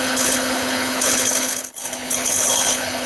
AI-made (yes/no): yes